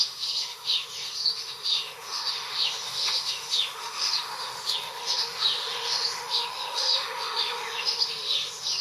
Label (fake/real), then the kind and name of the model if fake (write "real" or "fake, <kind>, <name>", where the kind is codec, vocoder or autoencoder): fake, autoencoder, DAC-VAE